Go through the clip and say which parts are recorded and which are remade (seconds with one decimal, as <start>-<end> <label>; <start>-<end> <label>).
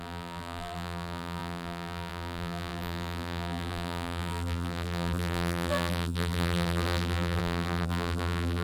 0.0-8.6 remade